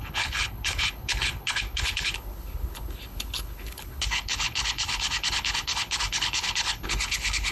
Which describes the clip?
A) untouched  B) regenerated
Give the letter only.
B